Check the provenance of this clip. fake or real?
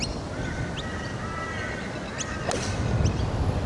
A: real